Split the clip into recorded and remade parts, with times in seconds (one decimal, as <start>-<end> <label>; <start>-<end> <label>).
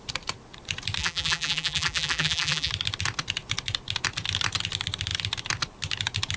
0.0-1.0 recorded; 1.0-2.7 remade; 2.7-6.4 recorded